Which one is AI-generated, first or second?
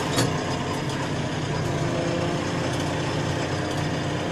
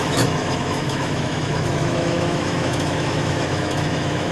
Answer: second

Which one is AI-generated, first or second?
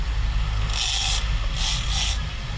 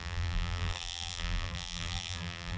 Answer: second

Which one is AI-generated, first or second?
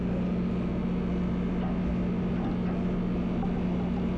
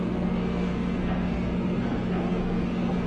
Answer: second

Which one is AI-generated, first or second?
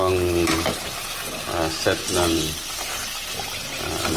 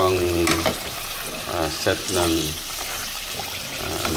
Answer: second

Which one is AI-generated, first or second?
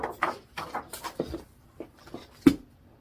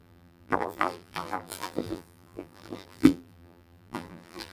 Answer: second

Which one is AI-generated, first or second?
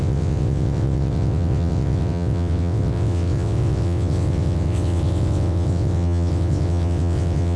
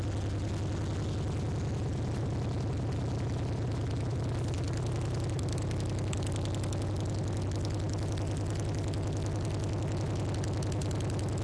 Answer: first